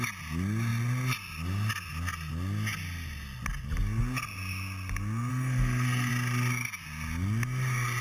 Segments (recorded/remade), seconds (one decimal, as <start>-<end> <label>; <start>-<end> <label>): 0.0-5.3 recorded; 5.3-6.1 remade; 6.1-8.0 recorded